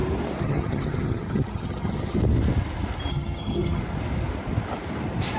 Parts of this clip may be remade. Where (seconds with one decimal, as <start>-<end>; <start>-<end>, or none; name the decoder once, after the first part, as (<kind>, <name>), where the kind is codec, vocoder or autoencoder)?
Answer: 0.4-2.2 (vocoder, HiFi-GAN); 3.1-3.8